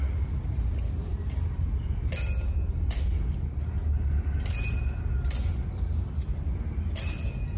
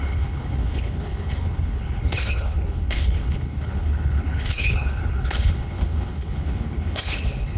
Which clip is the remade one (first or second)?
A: second